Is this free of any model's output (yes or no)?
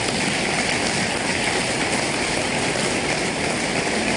yes